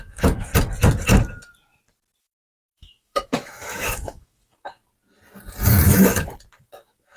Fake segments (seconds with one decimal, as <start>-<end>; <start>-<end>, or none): 0.0-0.5; 2.2-4.8; 6.6-7.2